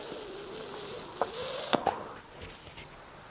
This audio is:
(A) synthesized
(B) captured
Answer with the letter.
B